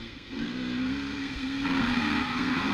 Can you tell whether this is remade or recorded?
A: remade